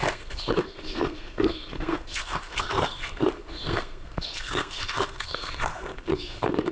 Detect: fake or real fake